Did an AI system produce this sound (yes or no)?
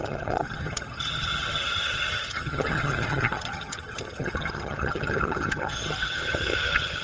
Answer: yes